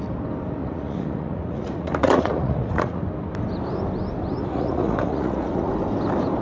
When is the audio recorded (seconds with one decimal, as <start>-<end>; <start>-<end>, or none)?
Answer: 0.0-0.6; 3.0-4.5; 5.7-6.4